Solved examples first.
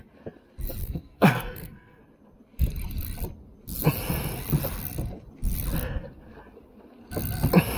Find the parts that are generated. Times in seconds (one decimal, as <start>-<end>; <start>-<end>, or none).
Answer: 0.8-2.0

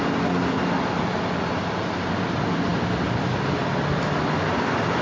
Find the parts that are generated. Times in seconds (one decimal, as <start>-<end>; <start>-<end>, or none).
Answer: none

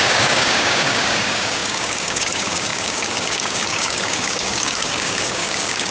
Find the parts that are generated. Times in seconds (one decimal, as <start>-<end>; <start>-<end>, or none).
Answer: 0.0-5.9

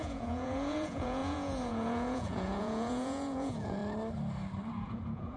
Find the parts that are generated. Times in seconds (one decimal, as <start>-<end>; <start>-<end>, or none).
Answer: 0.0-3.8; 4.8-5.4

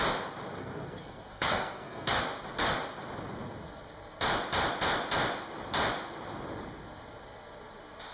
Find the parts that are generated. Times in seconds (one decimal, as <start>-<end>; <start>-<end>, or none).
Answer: 0.6-2.2

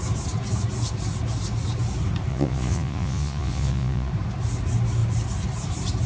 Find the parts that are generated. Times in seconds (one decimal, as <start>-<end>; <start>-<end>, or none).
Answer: 2.3-4.1